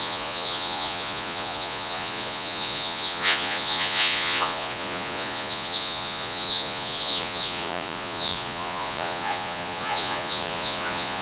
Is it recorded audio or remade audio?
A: remade